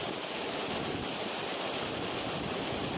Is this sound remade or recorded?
recorded